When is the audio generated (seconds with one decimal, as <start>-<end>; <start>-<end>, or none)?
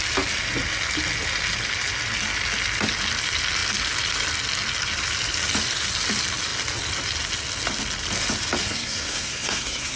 8.6-10.0